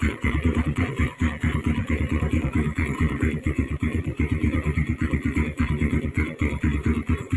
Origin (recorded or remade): remade